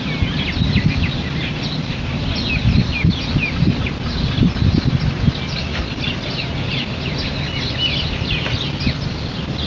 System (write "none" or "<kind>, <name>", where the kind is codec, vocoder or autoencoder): none